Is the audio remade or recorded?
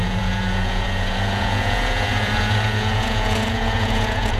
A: remade